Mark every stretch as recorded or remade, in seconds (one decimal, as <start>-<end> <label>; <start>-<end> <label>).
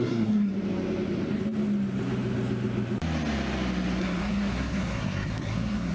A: 0.0-0.5 remade; 0.5-4.0 recorded; 4.0-5.9 remade